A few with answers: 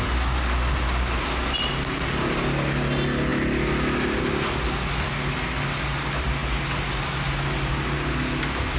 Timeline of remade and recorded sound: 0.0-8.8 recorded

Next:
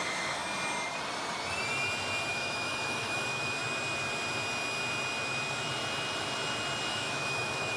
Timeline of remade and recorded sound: 0.0-0.4 remade; 0.4-2.3 recorded; 2.3-3.6 remade; 3.6-6.9 recorded; 6.9-7.8 remade